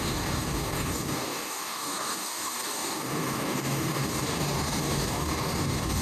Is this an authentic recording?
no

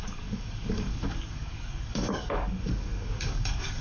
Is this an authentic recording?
no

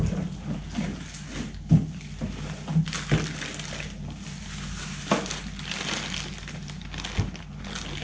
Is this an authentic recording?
yes